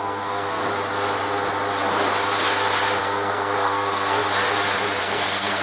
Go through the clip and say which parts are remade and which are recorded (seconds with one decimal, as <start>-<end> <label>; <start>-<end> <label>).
0.0-0.6 remade; 0.6-3.0 recorded; 3.0-4.2 remade; 4.2-5.0 recorded; 5.0-5.6 remade